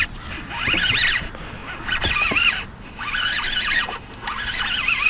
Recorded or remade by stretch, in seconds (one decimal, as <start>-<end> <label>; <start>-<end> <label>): 0.0-1.6 recorded; 1.6-2.1 remade; 2.1-5.1 recorded